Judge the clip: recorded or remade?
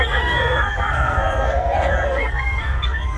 remade